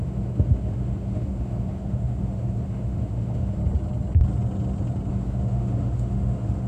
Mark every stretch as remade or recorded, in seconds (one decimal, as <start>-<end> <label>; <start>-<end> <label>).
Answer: 0.0-3.6 remade; 3.6-5.1 recorded; 5.1-6.7 remade